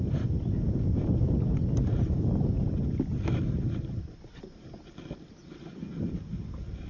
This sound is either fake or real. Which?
real